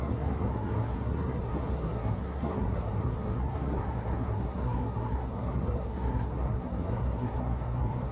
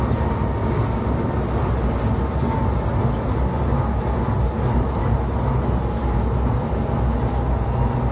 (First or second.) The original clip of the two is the second